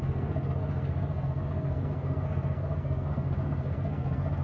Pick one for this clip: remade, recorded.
remade